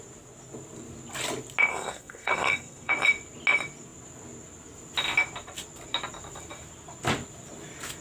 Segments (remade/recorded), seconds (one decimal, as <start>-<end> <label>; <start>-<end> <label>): 0.0-1.7 recorded; 1.7-2.9 remade; 2.9-8.0 recorded